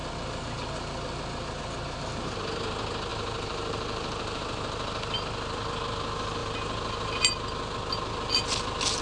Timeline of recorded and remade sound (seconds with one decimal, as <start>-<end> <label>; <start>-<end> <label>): 0.0-3.1 recorded; 3.1-4.4 remade; 4.4-6.4 recorded; 6.4-7.2 remade; 7.2-9.0 recorded